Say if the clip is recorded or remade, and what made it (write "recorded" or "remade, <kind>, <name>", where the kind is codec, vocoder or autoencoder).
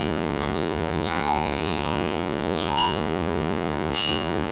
remade, vocoder, Vocos